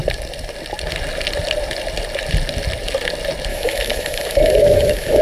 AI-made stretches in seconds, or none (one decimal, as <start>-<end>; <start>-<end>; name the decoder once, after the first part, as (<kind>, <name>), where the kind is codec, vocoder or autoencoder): 3.5-5.2 (autoencoder, DAC-VAE)